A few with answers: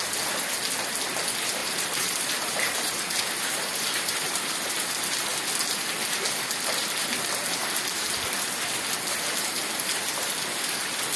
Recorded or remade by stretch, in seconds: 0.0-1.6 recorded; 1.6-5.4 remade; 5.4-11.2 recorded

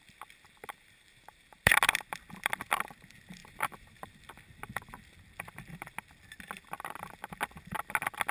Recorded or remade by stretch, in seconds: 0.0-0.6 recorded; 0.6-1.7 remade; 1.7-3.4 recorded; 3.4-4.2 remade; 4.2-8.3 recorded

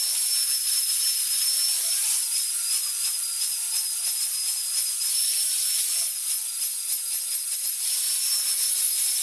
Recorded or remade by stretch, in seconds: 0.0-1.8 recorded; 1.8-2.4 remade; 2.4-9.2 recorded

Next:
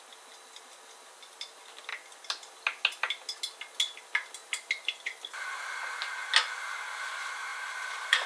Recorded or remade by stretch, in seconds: 0.0-4.4 recorded; 4.4-5.3 remade; 5.3-7.5 recorded; 7.5-8.3 remade